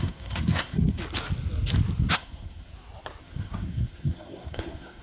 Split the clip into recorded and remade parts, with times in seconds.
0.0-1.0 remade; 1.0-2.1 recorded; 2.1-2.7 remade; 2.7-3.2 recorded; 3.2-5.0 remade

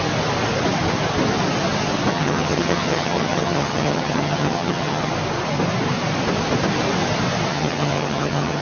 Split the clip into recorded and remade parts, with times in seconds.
0.0-2.1 recorded; 2.1-5.1 remade; 5.1-7.5 recorded; 7.5-8.6 remade

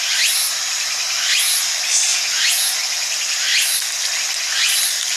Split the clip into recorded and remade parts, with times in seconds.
0.0-2.1 recorded; 2.1-2.8 remade; 2.8-5.2 recorded

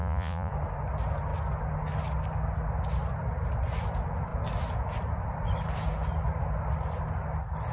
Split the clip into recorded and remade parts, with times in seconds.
0.0-0.5 remade; 0.5-7.7 recorded